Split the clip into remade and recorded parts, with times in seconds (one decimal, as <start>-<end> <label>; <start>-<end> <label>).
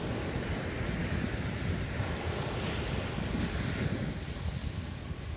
0.0-4.6 recorded; 4.6-5.4 remade